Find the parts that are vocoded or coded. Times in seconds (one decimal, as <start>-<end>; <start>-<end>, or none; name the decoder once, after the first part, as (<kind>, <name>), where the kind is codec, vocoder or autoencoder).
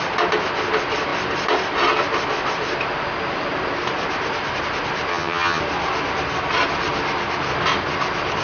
5.1-5.6 (vocoder, HiFi-GAN)